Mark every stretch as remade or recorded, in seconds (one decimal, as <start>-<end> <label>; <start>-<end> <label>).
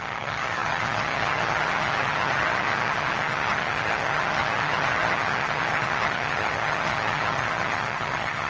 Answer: 0.0-8.5 remade